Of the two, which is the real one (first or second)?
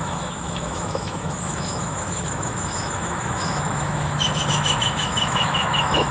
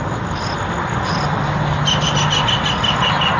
second